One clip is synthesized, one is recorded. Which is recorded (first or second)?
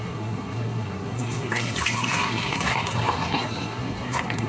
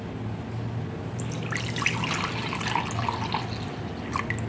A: second